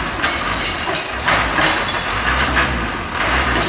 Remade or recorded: recorded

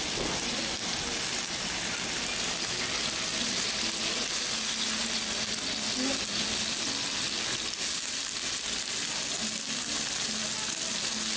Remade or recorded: recorded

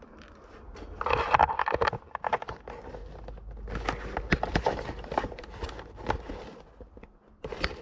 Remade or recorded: recorded